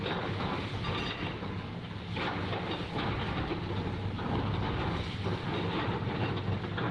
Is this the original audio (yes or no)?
yes